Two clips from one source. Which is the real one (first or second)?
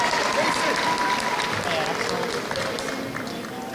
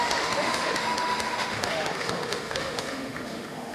first